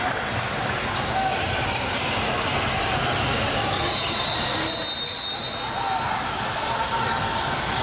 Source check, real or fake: real